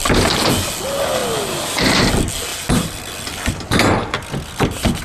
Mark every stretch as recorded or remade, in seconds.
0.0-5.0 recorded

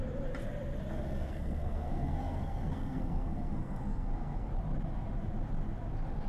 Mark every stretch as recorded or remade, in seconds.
0.0-0.9 recorded; 0.9-4.5 remade; 4.5-6.3 recorded